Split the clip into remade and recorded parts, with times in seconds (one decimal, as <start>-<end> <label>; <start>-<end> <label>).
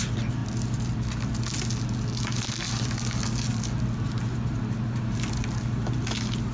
0.0-6.5 recorded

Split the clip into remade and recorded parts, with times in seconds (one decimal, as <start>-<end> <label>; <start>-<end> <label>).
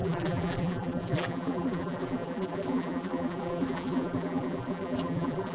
0.0-5.5 remade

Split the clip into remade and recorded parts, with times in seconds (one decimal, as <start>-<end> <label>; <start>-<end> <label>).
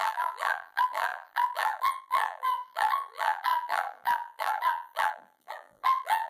0.0-6.3 remade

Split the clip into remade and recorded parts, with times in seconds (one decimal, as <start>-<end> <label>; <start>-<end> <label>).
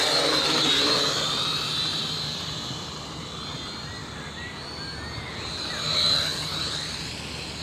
0.0-1.7 recorded; 1.7-3.3 remade; 3.3-6.3 recorded; 6.3-7.0 remade; 7.0-7.6 recorded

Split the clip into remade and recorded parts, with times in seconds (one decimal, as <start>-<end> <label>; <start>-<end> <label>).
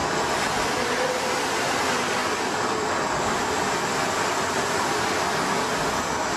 0.0-6.4 remade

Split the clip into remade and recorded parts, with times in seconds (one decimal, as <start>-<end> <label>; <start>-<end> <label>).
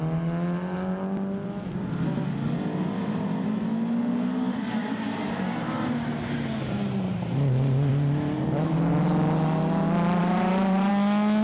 0.0-4.8 recorded; 4.8-7.9 remade; 7.9-10.2 recorded; 10.2-10.9 remade; 10.9-11.4 recorded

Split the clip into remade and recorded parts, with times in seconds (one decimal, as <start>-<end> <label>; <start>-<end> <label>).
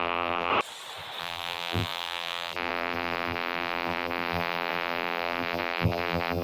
0.0-0.5 remade; 0.5-1.2 recorded; 1.2-6.4 remade